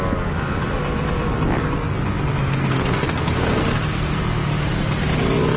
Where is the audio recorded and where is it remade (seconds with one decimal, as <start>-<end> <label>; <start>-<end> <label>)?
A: 0.0-2.4 recorded; 2.4-4.2 remade; 4.2-5.6 recorded